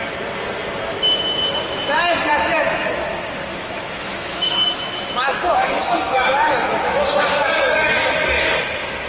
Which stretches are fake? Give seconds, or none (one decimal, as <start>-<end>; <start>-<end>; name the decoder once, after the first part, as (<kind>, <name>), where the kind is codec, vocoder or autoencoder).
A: 3.5-7.9 (autoencoder, DAC-VAE)